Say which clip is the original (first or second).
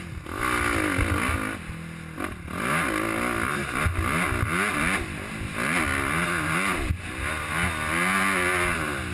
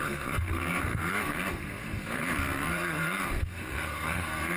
first